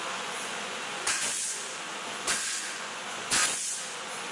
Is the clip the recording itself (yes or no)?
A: no